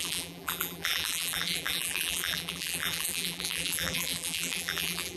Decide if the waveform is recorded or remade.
remade